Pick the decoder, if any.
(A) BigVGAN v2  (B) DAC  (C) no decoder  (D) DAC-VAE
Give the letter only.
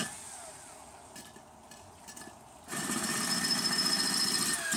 C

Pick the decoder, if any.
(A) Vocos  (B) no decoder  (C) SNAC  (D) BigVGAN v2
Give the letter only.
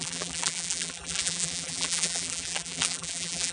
D